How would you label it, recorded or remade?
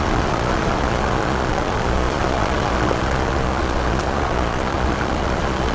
remade